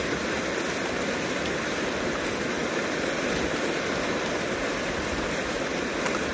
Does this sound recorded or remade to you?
recorded